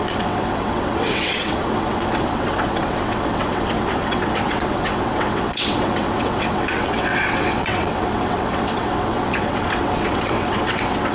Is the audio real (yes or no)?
no